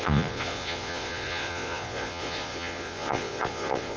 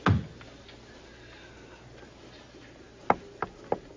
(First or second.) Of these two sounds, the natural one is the second